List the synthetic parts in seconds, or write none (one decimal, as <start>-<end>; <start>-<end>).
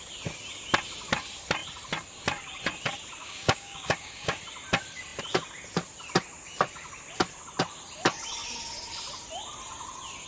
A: 3.2-4.4